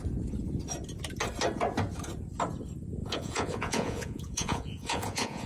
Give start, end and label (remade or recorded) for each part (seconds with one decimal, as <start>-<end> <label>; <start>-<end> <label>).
0.0-3.0 recorded; 3.0-5.5 remade